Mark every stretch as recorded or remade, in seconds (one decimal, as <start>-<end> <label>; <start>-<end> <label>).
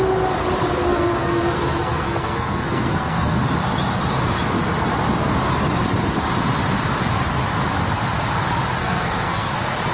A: 0.0-0.9 recorded; 0.9-3.4 remade; 3.4-8.8 recorded; 8.8-9.5 remade; 9.5-9.9 recorded